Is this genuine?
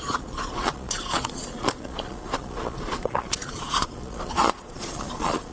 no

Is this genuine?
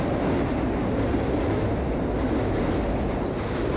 yes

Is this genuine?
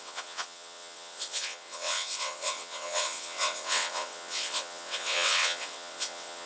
no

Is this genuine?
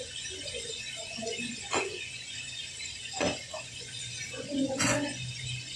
no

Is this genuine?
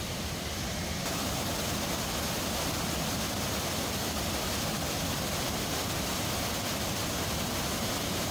yes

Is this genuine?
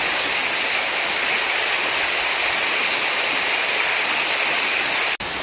yes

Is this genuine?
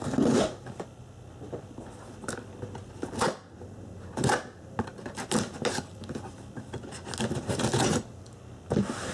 yes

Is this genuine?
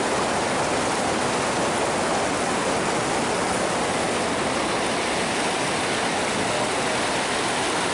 yes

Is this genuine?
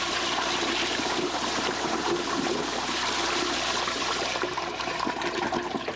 no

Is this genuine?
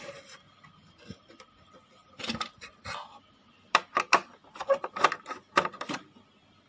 no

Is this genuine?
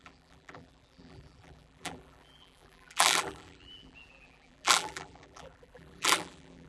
no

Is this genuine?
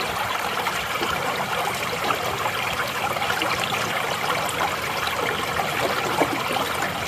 yes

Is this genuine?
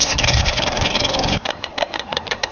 no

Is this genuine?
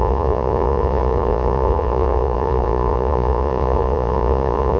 no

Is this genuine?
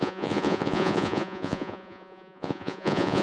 no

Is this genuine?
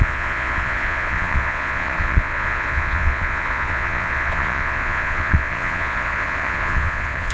no